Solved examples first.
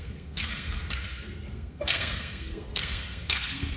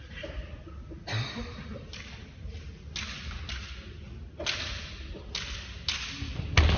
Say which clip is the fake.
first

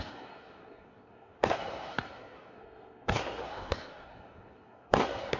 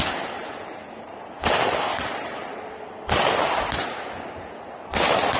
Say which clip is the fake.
first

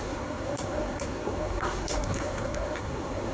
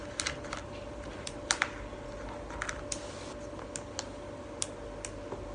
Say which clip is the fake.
first